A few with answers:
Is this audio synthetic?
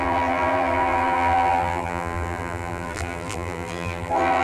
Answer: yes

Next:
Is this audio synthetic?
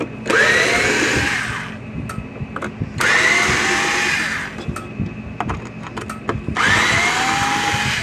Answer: no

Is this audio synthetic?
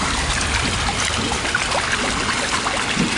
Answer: no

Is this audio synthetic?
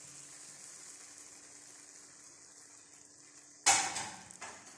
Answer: no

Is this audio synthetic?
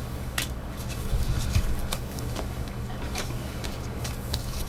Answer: yes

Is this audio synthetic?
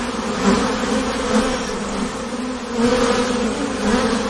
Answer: no